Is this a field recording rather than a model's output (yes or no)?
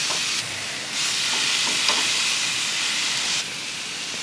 yes